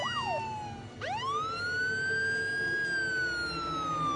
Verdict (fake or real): real